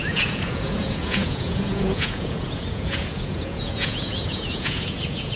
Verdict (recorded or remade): remade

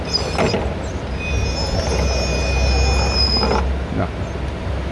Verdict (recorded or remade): recorded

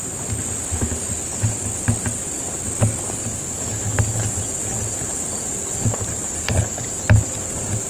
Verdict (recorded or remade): recorded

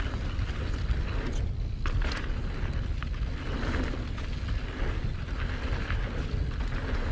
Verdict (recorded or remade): recorded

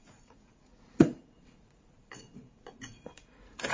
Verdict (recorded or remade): remade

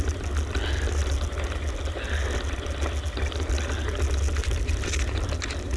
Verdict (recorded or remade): recorded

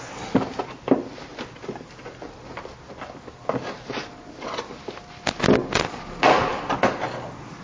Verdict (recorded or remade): recorded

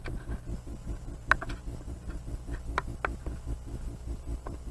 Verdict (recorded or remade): recorded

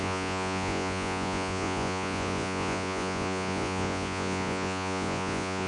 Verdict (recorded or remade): remade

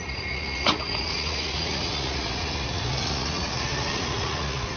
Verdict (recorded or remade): remade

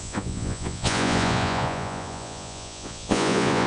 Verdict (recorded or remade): remade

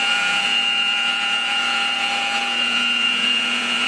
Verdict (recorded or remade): remade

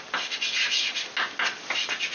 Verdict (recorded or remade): recorded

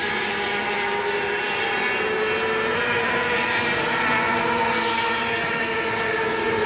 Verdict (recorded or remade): recorded